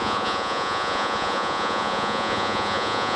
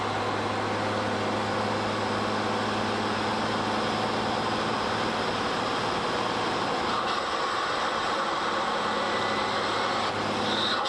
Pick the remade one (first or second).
first